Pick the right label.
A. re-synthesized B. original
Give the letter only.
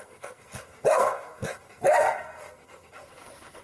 A